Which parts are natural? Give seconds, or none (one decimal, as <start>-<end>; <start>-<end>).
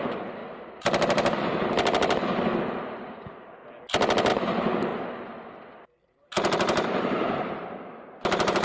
0.4-2.6; 3.6-4.3; 4.9-6.1